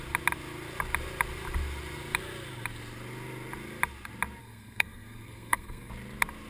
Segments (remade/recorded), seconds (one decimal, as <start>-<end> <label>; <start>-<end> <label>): 0.0-4.4 recorded; 4.4-5.9 remade; 5.9-6.5 recorded